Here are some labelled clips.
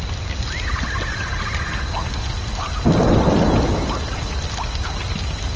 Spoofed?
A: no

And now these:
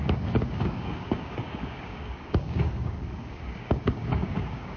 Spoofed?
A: yes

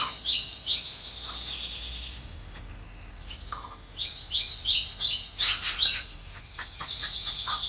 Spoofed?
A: no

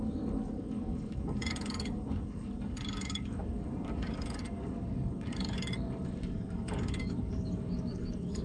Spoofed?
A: yes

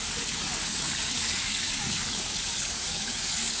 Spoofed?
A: yes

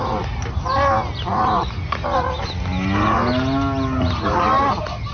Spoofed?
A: no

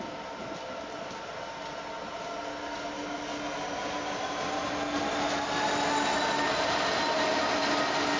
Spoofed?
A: no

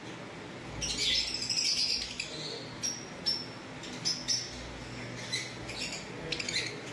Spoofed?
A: no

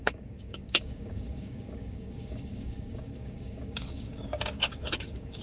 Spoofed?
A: yes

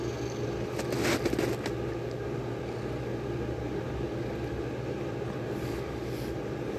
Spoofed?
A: no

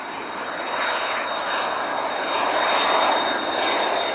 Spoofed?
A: no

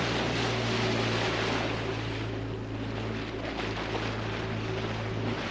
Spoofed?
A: no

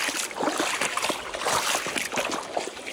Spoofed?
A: no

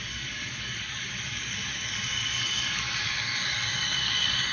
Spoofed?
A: yes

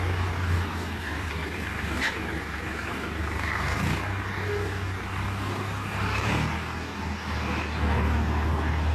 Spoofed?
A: yes